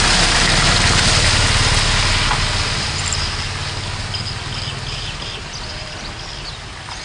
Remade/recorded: recorded